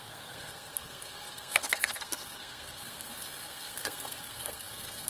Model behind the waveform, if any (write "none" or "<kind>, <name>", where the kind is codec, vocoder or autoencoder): codec, SNAC